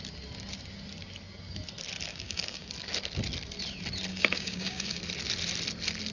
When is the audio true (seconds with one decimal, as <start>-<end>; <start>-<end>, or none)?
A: 0.0-2.1; 2.7-4.1; 5.0-6.1